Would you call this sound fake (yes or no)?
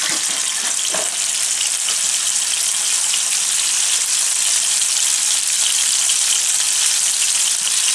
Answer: no